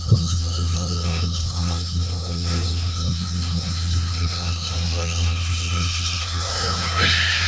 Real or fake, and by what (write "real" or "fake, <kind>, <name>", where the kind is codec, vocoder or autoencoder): fake, codec, SNAC